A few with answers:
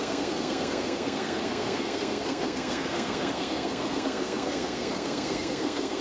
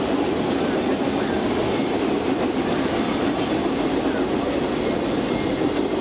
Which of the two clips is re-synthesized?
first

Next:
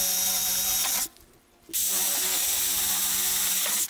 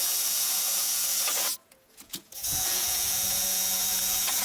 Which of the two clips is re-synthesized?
second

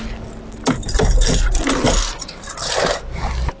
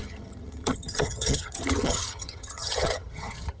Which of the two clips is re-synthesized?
second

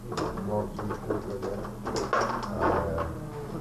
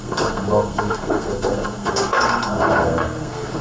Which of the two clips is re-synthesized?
second